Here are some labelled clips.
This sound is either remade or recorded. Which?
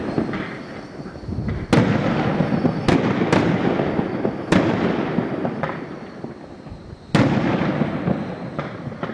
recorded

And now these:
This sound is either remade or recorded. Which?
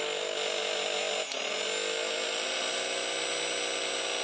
recorded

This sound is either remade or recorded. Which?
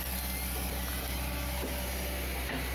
recorded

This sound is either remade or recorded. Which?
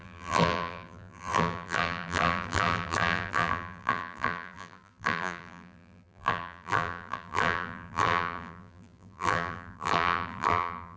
remade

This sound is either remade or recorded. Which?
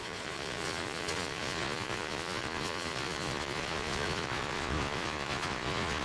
remade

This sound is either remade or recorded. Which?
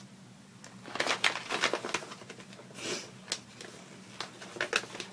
recorded